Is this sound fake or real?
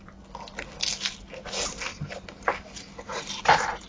real